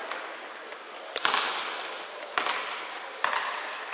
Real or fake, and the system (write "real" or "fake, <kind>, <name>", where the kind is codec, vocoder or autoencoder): real